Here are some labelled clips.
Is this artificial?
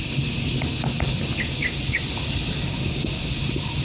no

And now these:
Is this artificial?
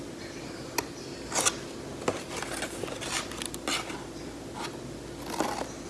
no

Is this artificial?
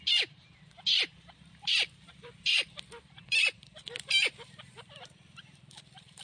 yes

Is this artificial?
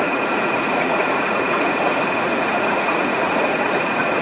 yes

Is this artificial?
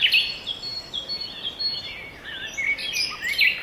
no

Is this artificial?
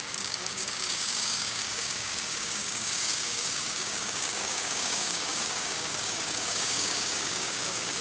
yes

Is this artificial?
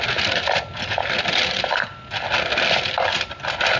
no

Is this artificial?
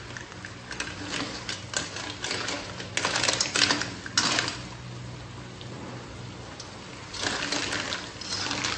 no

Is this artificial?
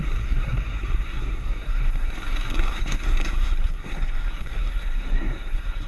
yes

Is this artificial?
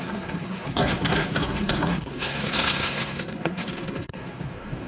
yes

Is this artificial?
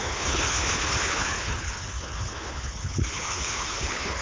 yes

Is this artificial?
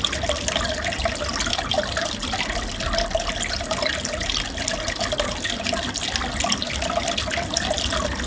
no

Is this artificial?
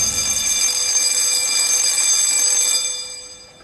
no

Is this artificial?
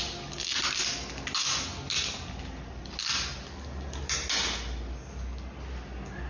no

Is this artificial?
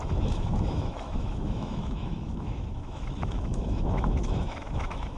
yes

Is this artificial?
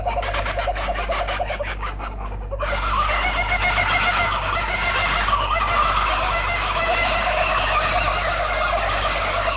yes